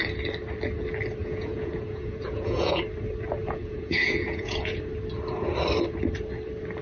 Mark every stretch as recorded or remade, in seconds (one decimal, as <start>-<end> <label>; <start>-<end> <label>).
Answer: 0.0-1.2 recorded; 1.2-2.8 remade; 2.8-3.4 recorded; 3.4-4.8 remade; 4.8-6.8 recorded